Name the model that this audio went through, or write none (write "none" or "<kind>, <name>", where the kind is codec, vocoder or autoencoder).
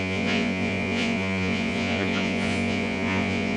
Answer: vocoder, Vocos